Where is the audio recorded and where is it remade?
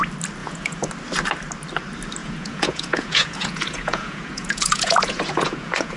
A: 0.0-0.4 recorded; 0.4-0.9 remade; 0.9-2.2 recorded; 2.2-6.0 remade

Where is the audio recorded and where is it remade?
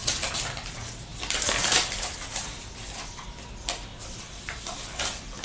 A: 0.0-0.5 remade; 0.5-1.1 recorded; 1.1-2.5 remade; 2.5-3.9 recorded; 3.9-4.6 remade; 4.6-5.4 recorded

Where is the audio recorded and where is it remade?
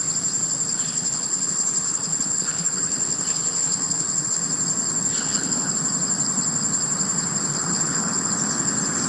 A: 0.0-0.7 recorded; 0.7-4.4 remade; 4.4-5.1 recorded; 5.1-5.7 remade; 5.7-7.5 recorded; 7.5-8.3 remade; 8.3-9.1 recorded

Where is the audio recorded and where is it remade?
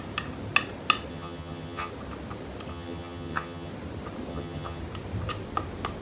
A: 0.0-1.1 recorded; 1.1-1.9 remade; 1.9-2.7 recorded; 2.7-3.7 remade; 3.7-4.3 recorded; 4.3-4.8 remade; 4.8-6.0 recorded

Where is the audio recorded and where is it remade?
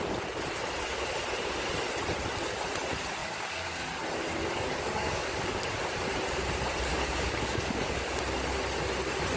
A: 0.0-3.2 recorded; 3.2-4.0 remade; 4.0-4.4 recorded; 4.4-5.7 remade; 5.7-6.9 recorded; 6.9-8.2 remade; 8.2-9.4 recorded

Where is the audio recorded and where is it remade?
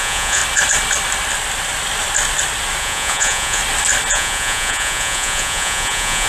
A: 0.0-0.4 remade; 0.4-2.8 recorded; 2.8-3.6 remade; 3.6-4.1 recorded; 4.1-6.3 remade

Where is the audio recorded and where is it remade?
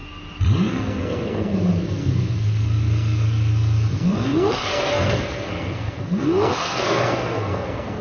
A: 0.0-0.7 recorded; 0.7-8.0 remade